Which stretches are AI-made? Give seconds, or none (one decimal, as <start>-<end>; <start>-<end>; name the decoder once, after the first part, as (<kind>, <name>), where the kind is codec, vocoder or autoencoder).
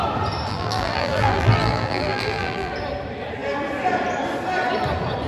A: 0.5-2.7 (vocoder, BigVGAN v2)